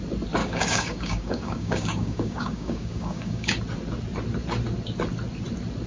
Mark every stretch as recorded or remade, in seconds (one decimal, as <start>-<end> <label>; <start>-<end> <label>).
0.0-0.4 recorded; 0.4-3.6 remade; 3.6-5.9 recorded